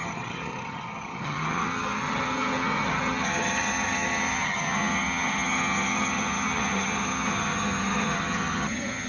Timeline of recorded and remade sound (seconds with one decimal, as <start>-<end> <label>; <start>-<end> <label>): 0.0-9.1 remade